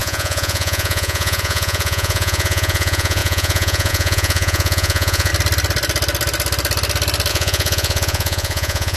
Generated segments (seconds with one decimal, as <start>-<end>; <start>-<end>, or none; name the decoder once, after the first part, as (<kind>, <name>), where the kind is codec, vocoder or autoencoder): 0.0-5.3 (vocoder, Vocos); 7.3-9.0